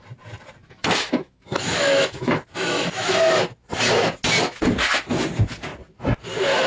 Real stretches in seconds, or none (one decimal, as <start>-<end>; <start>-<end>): 0.0-0.6; 3.1-6.7